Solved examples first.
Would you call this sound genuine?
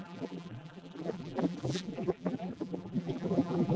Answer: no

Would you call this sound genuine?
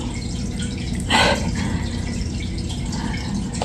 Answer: yes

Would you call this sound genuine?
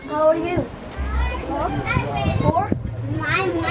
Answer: no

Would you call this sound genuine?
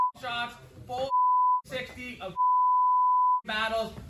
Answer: yes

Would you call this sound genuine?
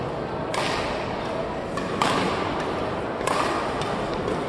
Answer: yes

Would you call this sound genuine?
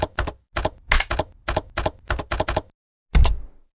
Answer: yes